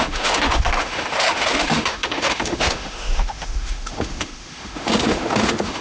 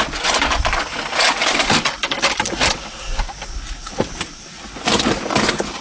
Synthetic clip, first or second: first